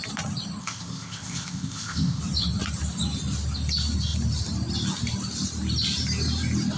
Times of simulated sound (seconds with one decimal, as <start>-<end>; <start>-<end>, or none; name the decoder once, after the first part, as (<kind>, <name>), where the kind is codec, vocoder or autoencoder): 0.6-2.2 (codec, ZipCodec)